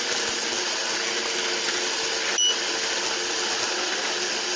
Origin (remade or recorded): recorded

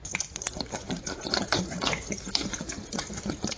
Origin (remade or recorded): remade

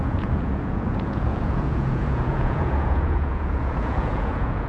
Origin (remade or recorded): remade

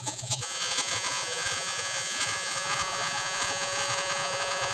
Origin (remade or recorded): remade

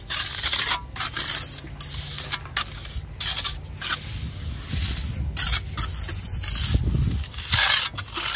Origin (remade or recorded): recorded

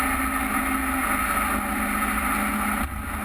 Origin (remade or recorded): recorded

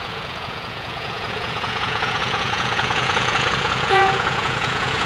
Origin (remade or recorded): remade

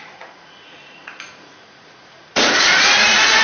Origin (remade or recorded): remade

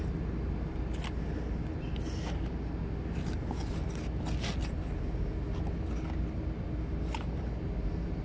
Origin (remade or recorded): recorded